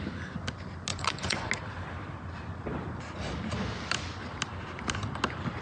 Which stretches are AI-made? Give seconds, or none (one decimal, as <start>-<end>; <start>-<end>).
0.9-1.5